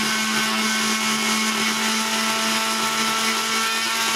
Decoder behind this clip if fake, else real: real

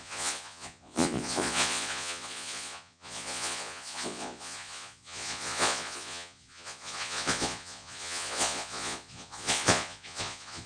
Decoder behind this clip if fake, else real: fake, vocoder, Vocos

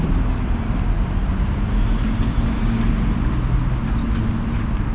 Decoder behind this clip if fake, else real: real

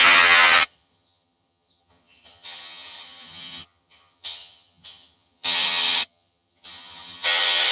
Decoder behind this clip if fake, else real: fake, vocoder, HiFi-GAN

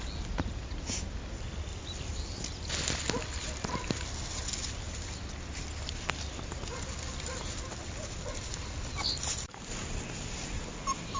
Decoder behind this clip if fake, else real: real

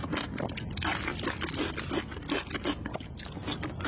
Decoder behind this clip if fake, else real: real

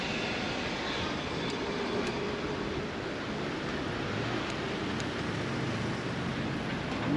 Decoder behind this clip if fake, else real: real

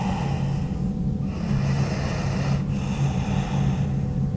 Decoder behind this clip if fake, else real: real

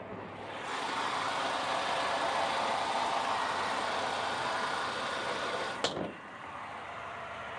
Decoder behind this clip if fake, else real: real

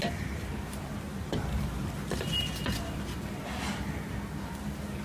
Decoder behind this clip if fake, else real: real